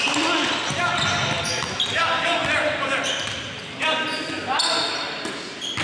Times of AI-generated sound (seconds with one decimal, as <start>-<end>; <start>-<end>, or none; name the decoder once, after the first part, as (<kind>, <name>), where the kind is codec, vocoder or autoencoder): none